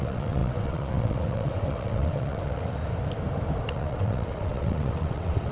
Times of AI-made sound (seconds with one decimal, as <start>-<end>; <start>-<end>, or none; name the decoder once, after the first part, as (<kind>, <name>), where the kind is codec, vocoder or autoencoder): 0.0-2.8 (vocoder, WaveNeXt); 3.7-5.5